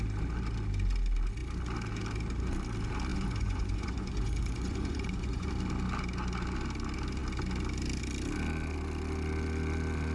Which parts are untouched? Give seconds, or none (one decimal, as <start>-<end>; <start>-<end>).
0.0-3.1; 5.5-10.1